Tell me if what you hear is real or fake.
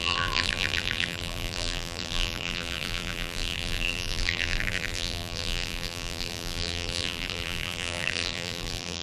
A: fake